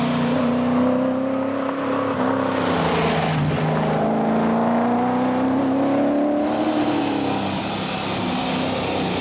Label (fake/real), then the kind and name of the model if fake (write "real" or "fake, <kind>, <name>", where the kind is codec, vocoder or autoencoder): real